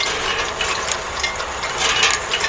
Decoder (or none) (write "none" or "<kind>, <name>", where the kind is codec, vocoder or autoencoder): none